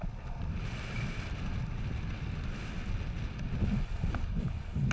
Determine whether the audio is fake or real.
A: real